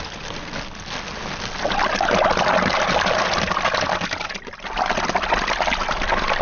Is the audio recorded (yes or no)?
yes